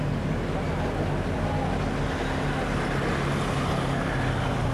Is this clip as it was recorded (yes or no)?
yes